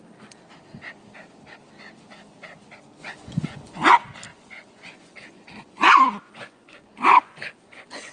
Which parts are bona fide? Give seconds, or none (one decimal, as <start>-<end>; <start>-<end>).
0.0-3.0; 3.9-4.3